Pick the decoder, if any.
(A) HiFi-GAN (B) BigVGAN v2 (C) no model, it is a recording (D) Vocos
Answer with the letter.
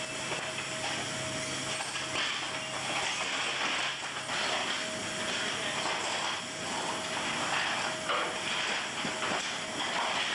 C